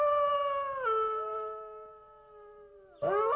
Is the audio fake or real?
real